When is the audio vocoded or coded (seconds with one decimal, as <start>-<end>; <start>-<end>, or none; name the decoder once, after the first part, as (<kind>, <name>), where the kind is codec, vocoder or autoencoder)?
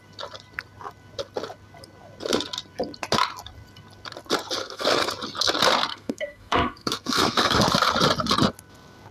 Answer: 4.6-5.1 (codec, SNAC); 5.9-7.6